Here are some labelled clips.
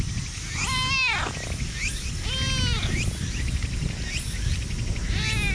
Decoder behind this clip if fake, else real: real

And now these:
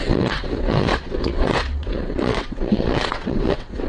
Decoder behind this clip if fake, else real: fake, vocoder, WaveNeXt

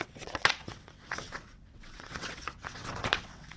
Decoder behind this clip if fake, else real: fake, vocoder, WaveNeXt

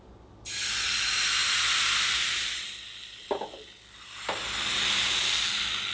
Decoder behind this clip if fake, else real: real